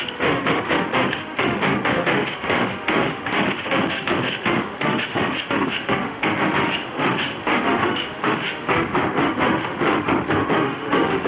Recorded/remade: remade